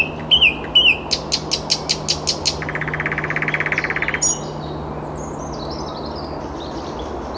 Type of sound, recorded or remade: recorded